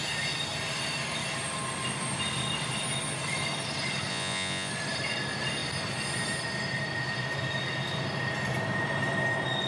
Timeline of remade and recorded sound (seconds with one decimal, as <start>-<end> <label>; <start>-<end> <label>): 0.0-4.1 recorded; 4.1-4.7 remade; 4.7-9.7 recorded